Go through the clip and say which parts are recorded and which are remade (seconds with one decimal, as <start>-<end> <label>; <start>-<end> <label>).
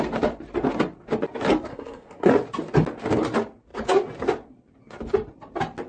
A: 0.0-1.7 recorded; 1.7-2.3 remade; 2.3-5.9 recorded